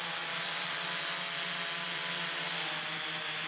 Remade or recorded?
recorded